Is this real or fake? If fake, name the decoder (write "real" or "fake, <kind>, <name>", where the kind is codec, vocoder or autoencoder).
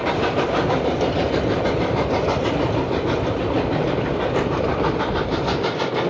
real